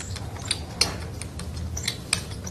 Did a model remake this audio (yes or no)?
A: no